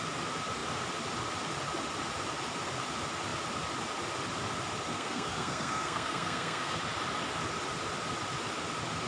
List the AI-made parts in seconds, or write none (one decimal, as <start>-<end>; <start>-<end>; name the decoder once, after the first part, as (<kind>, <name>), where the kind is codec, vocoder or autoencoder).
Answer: 4.9-6.8 (codec, SNAC)